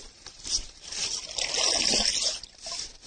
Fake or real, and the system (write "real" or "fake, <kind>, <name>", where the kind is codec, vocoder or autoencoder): real